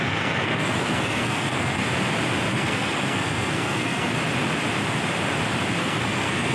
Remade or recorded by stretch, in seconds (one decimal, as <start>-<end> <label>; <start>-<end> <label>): 0.0-1.8 remade; 1.8-2.5 recorded; 2.5-4.1 remade; 4.1-5.8 recorded; 5.8-6.5 remade